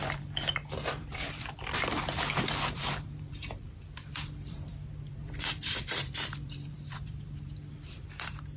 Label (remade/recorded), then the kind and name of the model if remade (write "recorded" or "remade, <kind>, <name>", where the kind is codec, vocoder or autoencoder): remade, vocoder, BigVGAN v2